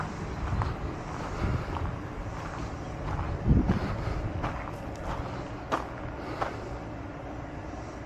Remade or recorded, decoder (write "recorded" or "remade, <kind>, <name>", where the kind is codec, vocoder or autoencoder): recorded